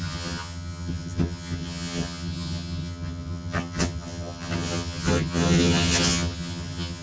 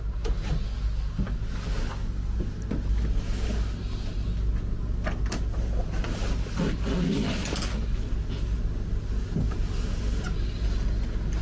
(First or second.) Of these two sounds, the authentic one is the second